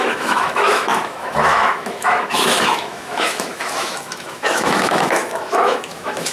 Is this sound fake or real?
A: fake